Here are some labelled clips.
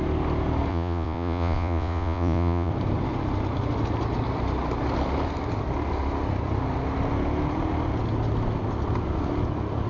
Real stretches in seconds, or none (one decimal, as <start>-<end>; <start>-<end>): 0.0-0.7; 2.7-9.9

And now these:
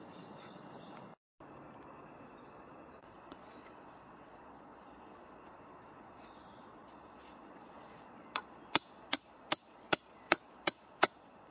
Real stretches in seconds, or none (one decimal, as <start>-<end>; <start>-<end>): 1.1-3.0

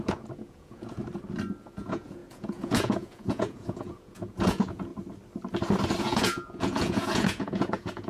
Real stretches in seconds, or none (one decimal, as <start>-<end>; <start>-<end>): 1.0-1.6; 4.9-6.0